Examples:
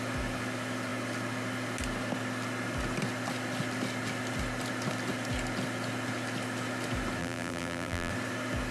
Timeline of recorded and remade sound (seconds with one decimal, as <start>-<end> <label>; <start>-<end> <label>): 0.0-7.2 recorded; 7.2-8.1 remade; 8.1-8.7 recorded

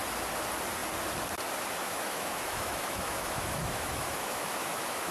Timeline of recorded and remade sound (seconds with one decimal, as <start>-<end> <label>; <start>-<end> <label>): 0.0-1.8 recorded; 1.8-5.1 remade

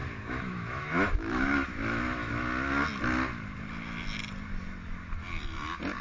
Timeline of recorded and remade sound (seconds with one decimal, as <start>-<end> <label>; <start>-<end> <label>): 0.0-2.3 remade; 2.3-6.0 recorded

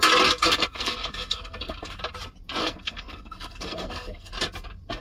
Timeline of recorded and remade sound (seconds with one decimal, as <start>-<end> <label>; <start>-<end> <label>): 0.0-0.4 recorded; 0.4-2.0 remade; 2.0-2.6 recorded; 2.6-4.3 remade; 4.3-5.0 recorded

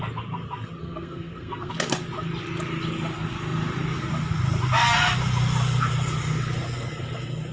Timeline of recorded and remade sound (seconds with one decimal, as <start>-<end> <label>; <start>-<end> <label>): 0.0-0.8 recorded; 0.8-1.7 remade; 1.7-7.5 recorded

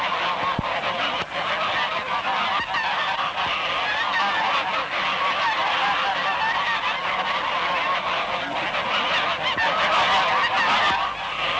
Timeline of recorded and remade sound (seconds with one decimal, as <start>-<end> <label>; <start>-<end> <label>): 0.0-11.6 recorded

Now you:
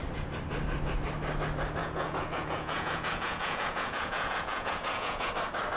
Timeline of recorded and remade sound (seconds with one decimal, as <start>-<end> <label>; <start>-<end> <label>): 0.0-1.8 recorded; 1.8-5.3 remade; 5.3-5.8 recorded

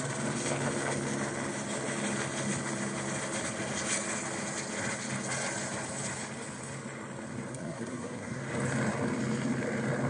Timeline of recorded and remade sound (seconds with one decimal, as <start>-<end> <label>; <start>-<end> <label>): 0.0-7.5 recorded; 7.5-8.4 remade; 8.4-10.1 recorded